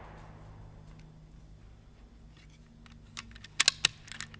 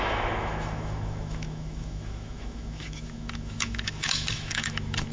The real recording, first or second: first